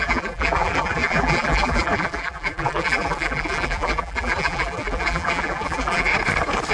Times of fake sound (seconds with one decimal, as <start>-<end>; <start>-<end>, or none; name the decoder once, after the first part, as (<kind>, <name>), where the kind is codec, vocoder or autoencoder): 0.0-6.1 (vocoder, BigVGAN v2)